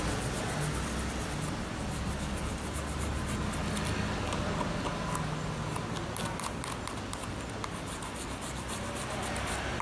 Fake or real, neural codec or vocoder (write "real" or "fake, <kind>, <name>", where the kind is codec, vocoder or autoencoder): real